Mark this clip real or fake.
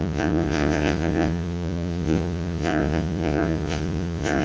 fake